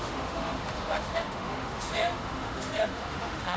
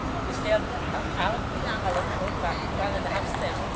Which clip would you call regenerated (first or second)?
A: first